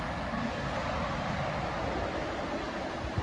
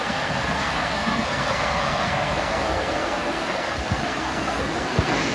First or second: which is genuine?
first